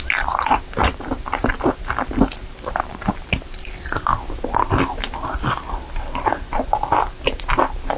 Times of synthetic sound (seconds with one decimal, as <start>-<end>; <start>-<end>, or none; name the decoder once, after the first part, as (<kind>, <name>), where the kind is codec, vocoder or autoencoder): 0.9-1.5 (vocoder, BigVGAN v2); 2.4-2.9